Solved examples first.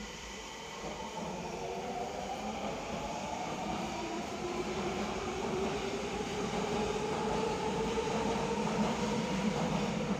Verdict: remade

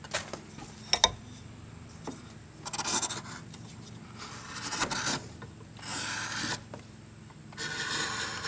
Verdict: recorded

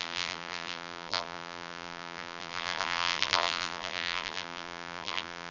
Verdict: remade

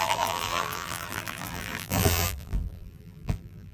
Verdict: remade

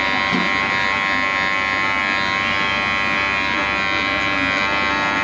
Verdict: recorded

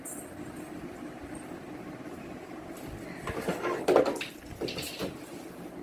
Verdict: recorded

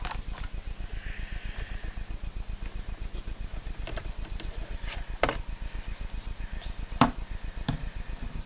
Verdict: recorded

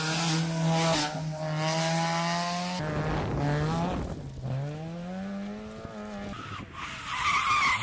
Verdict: recorded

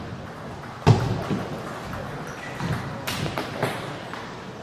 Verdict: recorded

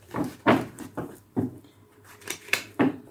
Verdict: remade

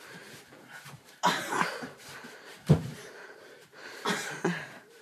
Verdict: remade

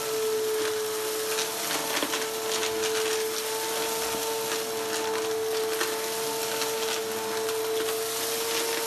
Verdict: recorded